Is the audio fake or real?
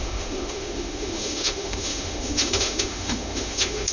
fake